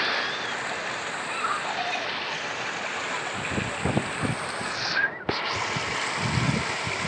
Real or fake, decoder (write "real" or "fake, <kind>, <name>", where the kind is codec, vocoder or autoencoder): real